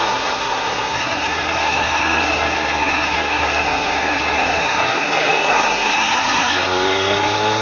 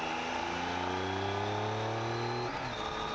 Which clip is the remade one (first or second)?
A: first